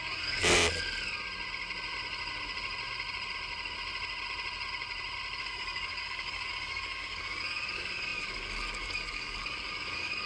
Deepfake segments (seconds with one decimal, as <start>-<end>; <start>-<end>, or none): 0.0-0.4; 5.4-10.3